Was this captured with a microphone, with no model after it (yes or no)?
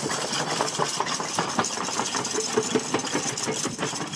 yes